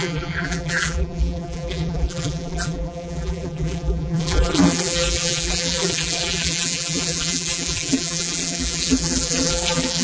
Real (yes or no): no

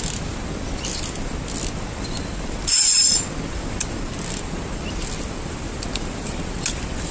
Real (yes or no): yes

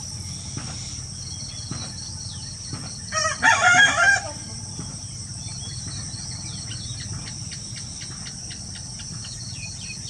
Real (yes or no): no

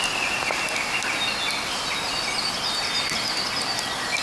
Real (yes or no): yes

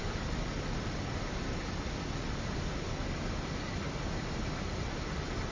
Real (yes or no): yes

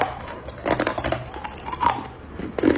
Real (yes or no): yes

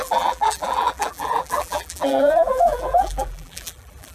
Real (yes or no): no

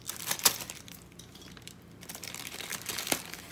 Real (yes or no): no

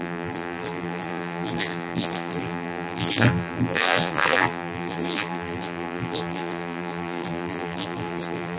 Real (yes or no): no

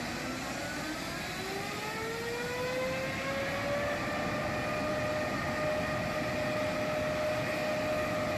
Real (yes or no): yes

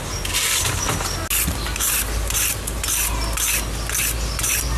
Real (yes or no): yes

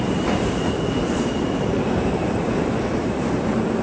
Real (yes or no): no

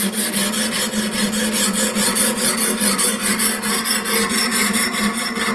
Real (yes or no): yes